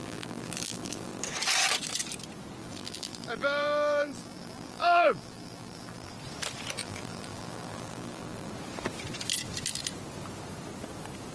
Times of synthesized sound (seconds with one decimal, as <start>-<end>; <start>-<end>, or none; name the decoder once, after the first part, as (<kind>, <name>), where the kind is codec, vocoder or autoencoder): 0.0-1.2 (vocoder, BigVGAN v2); 2.6-6.1; 6.8-8.5